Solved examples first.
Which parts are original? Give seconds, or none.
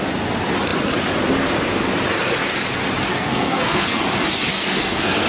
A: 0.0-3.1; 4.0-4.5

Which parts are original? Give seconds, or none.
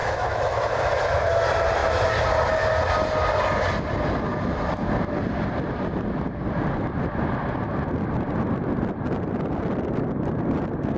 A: 0.6-11.0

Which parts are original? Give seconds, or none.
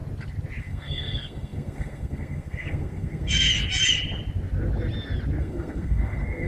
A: 0.0-0.6; 3.5-5.4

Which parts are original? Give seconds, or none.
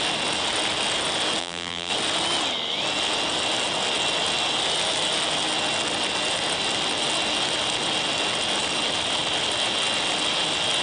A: 0.0-1.4; 1.9-10.8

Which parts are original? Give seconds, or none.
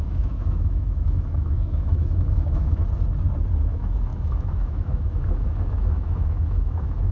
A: 2.8-3.6